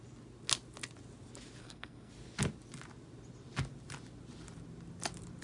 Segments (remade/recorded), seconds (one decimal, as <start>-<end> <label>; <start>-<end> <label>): 0.0-1.6 recorded; 1.6-2.1 remade; 2.1-5.4 recorded